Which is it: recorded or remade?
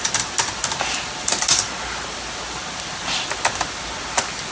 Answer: recorded